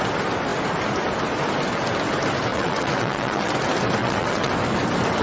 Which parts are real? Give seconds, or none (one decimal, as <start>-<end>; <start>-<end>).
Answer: 0.0-2.5; 3.5-4.0; 4.5-5.2